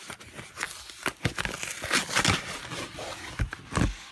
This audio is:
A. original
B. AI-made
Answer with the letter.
A